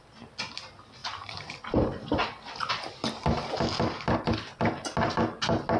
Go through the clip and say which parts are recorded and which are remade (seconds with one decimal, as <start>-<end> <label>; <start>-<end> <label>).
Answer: 0.0-1.0 recorded; 1.0-2.7 remade; 2.7-5.8 recorded